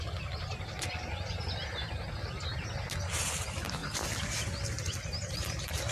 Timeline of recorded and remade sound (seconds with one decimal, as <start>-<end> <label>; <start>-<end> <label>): 0.0-5.9 recorded